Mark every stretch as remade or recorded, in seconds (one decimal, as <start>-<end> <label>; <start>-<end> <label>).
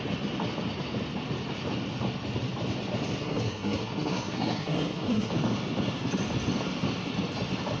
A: 0.0-3.2 recorded; 3.2-5.3 remade; 5.3-7.8 recorded